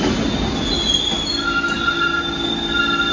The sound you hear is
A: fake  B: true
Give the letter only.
B